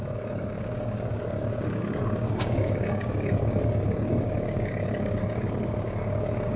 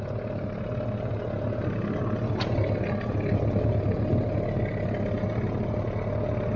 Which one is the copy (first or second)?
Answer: first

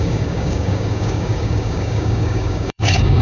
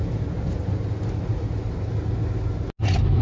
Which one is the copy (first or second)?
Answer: first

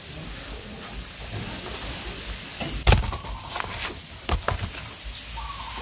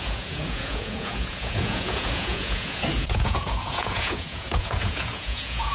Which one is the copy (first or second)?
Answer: second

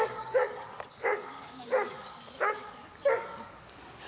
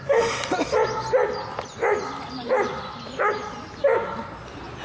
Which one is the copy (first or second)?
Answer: first